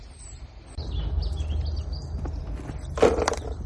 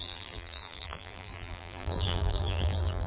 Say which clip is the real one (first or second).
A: first